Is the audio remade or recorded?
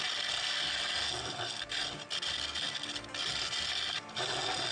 recorded